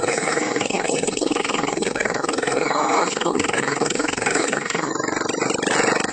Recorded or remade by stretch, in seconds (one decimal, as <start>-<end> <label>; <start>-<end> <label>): 0.0-4.9 remade; 4.9-6.1 recorded